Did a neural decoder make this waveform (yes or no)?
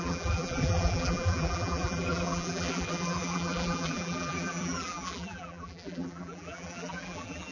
yes